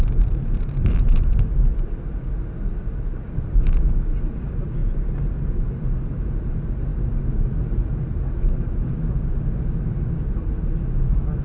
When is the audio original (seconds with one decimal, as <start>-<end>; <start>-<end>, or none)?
0.0-11.4